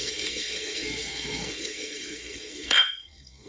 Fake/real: fake